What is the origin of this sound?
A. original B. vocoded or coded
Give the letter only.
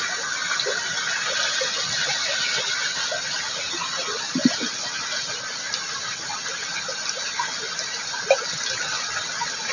A